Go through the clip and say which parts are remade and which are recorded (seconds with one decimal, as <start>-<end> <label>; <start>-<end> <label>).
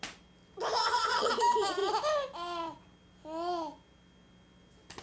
0.0-0.8 recorded; 0.8-1.3 remade; 1.3-5.0 recorded